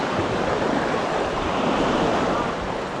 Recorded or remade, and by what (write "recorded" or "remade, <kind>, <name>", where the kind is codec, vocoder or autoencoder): recorded